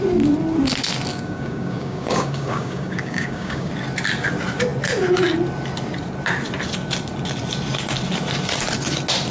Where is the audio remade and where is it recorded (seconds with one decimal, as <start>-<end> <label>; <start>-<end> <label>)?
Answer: 0.0-1.1 recorded; 1.1-3.7 remade; 3.7-9.3 recorded